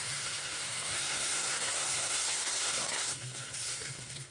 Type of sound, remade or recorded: remade